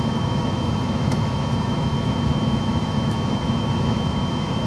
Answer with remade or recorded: remade